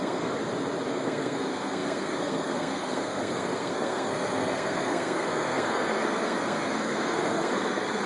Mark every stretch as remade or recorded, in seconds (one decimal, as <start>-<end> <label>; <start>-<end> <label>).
0.0-0.4 remade; 0.4-0.9 recorded; 0.9-8.1 remade